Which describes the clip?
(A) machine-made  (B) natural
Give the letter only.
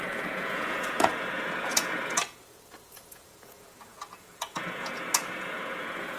A